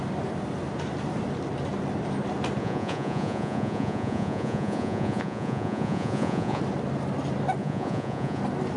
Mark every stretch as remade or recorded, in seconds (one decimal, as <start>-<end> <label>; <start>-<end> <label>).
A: 0.0-2.6 recorded; 2.6-6.6 remade; 6.6-7.6 recorded; 7.6-8.4 remade; 8.4-8.8 recorded